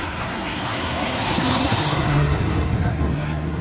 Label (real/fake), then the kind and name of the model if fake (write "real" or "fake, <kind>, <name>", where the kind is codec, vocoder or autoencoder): fake, codec, SNAC